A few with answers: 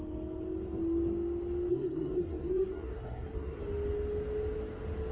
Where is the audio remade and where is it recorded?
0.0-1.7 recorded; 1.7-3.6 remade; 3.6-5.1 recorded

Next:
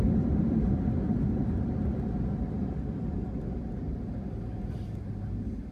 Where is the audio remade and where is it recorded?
0.0-5.7 recorded

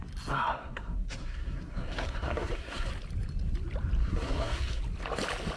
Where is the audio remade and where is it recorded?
0.0-0.6 recorded; 0.6-2.9 remade; 2.9-4.0 recorded; 4.0-4.8 remade; 4.8-5.6 recorded

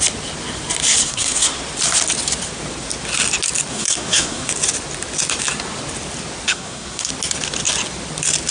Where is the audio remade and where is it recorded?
0.0-1.0 recorded; 1.0-1.6 remade; 1.6-3.7 recorded; 3.7-4.5 remade; 4.5-6.5 recorded; 6.5-7.1 remade; 7.1-8.5 recorded

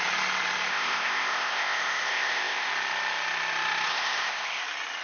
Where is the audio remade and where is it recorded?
0.0-0.7 recorded; 0.7-2.7 remade; 2.7-3.9 recorded; 3.9-4.6 remade; 4.6-5.0 recorded

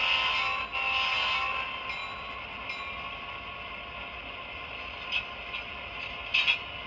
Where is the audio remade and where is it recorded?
0.0-6.9 recorded